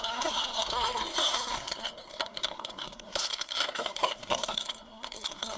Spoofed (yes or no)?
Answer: yes